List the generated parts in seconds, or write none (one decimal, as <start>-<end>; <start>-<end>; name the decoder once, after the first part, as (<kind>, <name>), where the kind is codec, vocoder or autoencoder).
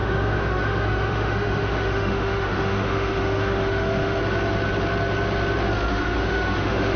0.0-4.2 (autoencoder, DAC-VAE); 5.9-7.0